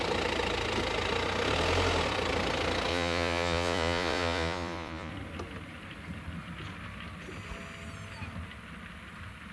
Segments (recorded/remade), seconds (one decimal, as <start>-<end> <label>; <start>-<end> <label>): 0.0-2.9 recorded; 2.9-5.1 remade; 5.1-9.5 recorded